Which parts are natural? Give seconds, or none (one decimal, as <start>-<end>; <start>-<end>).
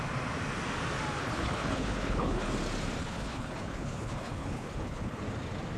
0.0-1.2; 2.5-3.0; 5.2-5.8